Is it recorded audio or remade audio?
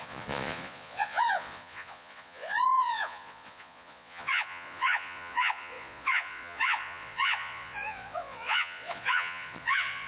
remade